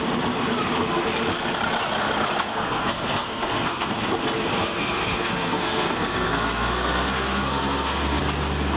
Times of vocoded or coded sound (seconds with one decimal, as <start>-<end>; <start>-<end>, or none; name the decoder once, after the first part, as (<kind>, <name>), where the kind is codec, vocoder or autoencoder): 2.5-3.9 (codec, SNAC); 4.5-8.2